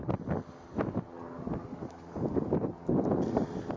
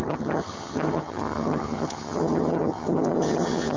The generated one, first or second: second